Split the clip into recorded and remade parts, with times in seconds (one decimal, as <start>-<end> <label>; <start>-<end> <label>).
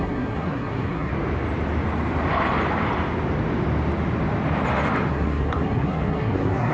0.0-1.1 remade; 1.1-5.1 recorded; 5.1-6.7 remade